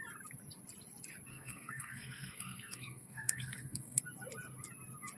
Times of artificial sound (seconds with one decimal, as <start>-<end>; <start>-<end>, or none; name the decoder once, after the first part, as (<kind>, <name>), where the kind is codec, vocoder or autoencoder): 1.3-4.0 (codec, SNAC)